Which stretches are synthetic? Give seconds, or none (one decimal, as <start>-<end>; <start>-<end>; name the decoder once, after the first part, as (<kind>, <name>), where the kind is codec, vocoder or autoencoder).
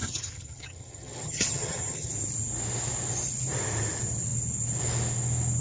0.0-2.1 (vocoder, HiFi-GAN)